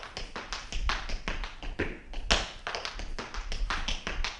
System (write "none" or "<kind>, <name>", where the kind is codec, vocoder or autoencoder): none